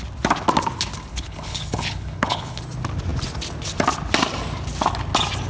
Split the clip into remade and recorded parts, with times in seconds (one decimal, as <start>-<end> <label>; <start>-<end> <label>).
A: 0.0-1.1 recorded; 1.1-2.6 remade; 2.6-5.5 recorded